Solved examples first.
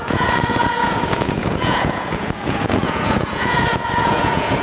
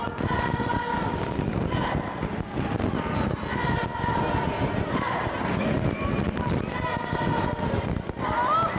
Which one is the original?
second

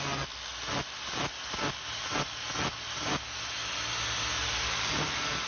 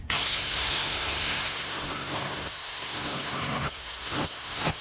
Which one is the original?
first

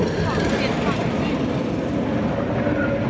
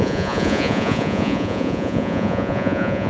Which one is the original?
first